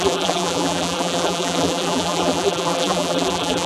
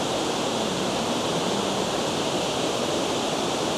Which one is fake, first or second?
first